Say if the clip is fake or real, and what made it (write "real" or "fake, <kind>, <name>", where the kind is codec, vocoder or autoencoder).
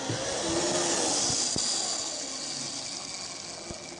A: real